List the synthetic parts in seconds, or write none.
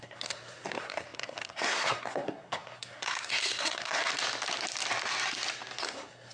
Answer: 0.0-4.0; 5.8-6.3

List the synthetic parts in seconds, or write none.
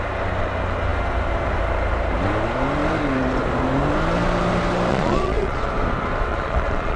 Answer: 4.9-5.7; 6.3-7.0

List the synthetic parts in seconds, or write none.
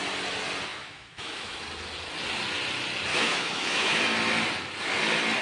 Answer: 0.7-1.6; 3.1-4.0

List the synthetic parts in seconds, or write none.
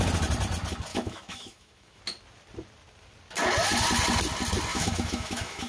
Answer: 0.9-2.0; 4.7-5.7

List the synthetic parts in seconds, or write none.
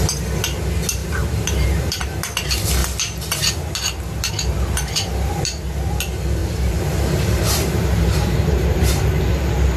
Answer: 1.0-2.0; 6.4-9.0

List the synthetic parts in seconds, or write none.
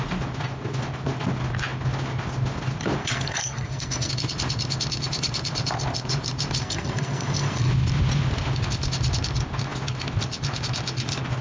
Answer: 3.0-4.1; 6.6-7.7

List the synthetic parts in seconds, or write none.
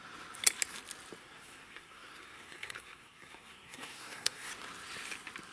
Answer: 1.2-4.5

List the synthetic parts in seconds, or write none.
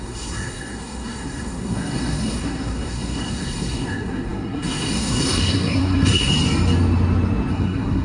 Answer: 0.0-6.3; 7.5-8.0